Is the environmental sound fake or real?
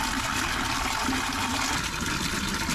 real